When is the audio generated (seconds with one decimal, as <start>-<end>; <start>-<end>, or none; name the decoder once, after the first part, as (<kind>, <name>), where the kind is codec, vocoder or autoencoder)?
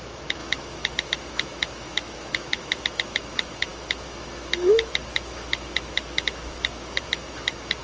0.0-7.8 (autoencoder, DAC-VAE)